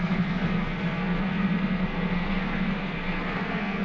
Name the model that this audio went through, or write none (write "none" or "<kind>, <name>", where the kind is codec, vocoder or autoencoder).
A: codec, SNAC